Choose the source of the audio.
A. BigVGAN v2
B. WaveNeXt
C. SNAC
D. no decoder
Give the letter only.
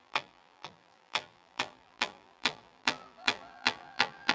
A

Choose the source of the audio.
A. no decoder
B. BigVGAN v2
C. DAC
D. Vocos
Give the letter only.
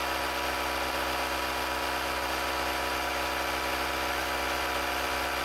A